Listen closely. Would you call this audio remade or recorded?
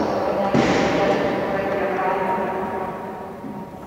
remade